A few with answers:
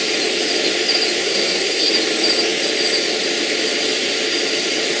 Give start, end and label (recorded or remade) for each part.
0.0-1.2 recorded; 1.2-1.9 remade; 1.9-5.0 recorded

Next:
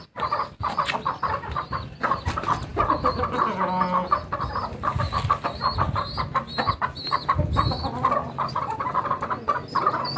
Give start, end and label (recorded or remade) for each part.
0.0-10.2 recorded

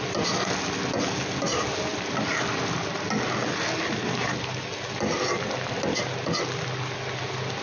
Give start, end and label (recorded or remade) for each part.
0.0-7.6 recorded

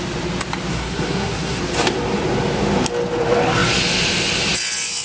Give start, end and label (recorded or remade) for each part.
0.0-0.7 recorded; 0.7-1.6 remade; 1.6-5.0 recorded

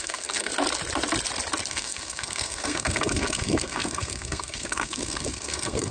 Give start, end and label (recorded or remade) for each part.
0.0-0.5 remade; 0.5-1.7 recorded; 1.7-5.9 remade